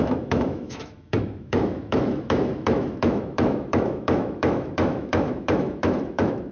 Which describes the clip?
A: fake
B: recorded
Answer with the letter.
A